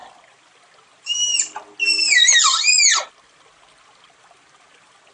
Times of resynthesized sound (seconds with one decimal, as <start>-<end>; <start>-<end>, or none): none

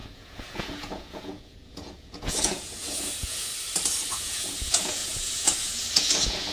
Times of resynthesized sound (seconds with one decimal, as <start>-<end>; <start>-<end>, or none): 0.0-3.5; 4.1-6.5

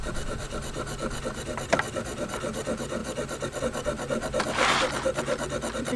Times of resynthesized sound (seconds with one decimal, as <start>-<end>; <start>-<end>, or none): none

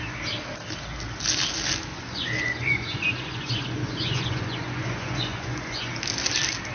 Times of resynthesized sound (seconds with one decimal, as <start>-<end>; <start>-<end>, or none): 1.9-5.9